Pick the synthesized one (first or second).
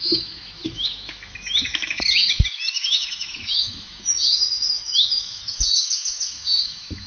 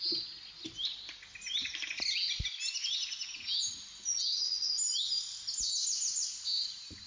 first